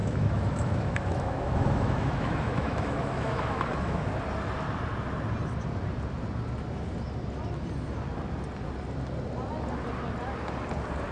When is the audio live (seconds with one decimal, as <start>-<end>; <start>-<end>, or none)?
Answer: 4.1-11.1